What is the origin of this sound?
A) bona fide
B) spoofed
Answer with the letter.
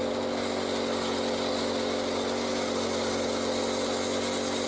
A